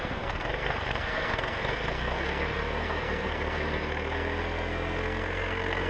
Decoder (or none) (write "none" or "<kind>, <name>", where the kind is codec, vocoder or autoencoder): codec, SNAC